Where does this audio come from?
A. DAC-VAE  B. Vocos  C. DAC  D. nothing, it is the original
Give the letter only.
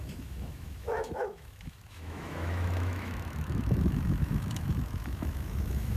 A